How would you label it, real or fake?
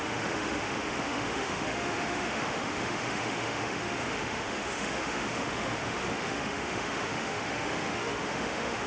fake